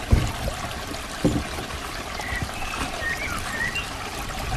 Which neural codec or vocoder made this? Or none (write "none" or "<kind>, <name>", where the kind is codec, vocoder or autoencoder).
none